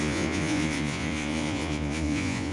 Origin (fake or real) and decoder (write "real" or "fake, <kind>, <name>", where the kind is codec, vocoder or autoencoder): fake, vocoder, Vocos